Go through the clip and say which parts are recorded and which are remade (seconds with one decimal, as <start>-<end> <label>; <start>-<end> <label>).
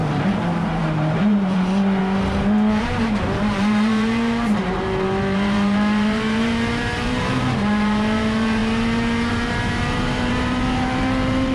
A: 0.0-0.8 recorded; 0.8-2.0 remade; 2.0-2.8 recorded; 2.8-11.5 remade